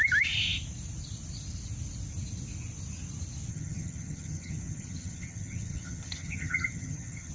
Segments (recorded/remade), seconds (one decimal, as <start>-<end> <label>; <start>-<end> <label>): 0.0-3.5 recorded; 3.5-7.3 remade